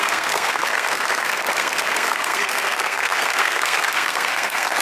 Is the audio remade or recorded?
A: remade